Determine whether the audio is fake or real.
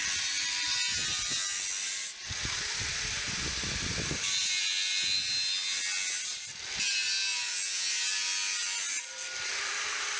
real